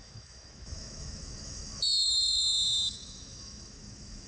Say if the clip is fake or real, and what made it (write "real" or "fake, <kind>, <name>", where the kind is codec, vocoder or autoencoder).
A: fake, autoencoder, DAC-VAE